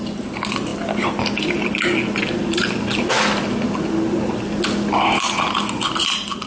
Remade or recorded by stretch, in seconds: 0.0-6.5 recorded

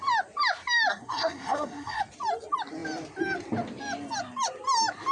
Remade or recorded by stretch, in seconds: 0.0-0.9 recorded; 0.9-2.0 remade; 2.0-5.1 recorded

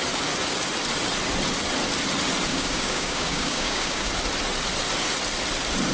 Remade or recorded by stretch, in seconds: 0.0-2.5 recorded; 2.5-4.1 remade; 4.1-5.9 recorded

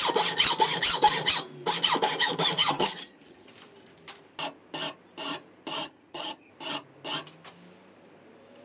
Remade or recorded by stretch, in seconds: 0.0-2.6 recorded; 2.6-3.5 remade; 3.5-5.8 recorded; 5.8-6.5 remade; 6.5-8.6 recorded

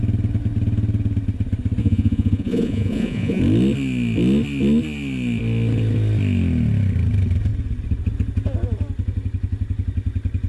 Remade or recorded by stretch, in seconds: 0.0-1.8 recorded; 1.8-3.4 remade; 3.4-10.5 recorded

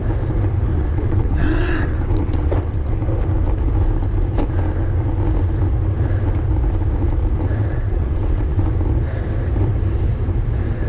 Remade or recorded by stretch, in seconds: 0.0-0.7 recorded; 0.7-2.9 remade; 2.9-7.6 recorded; 7.6-8.6 remade; 8.6-10.9 recorded

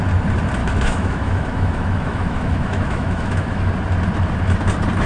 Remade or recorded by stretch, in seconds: 0.0-0.6 recorded; 0.6-3.7 remade; 3.7-5.1 recorded